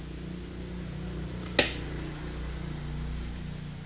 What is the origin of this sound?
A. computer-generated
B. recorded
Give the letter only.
B